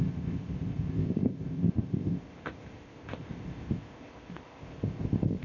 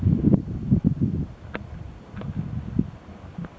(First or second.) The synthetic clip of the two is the first